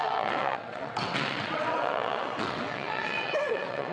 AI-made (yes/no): yes